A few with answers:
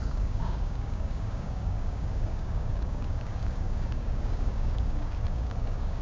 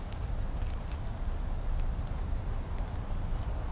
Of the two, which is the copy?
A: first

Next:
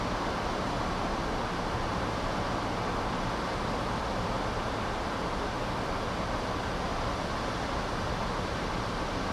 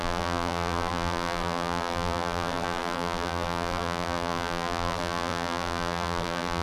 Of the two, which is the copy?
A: second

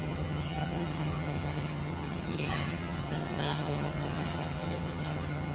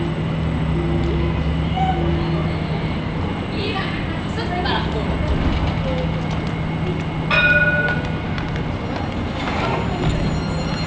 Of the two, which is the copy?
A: first